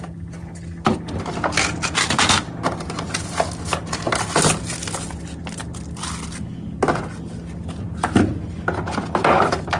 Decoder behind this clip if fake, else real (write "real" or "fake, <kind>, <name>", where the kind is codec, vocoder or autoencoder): real